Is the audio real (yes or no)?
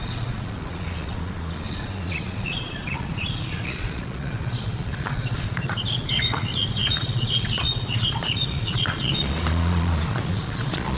no